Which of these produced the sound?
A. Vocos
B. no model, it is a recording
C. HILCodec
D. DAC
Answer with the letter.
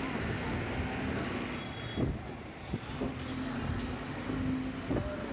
B